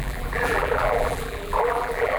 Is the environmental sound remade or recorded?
remade